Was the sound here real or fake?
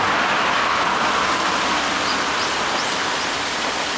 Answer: real